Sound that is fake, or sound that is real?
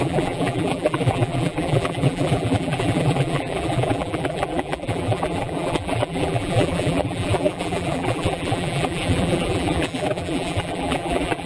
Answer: fake